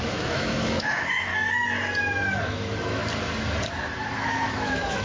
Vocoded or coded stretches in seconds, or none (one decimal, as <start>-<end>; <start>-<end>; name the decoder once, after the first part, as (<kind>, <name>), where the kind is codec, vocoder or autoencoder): 0.0-1.3 (autoencoder, DAC-VAE); 2.4-3.0; 4.1-5.0